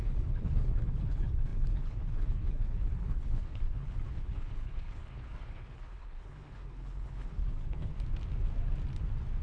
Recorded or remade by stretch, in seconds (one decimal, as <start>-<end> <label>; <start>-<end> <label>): 0.0-7.9 remade; 7.9-9.4 recorded